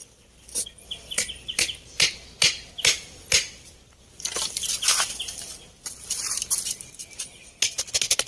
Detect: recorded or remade recorded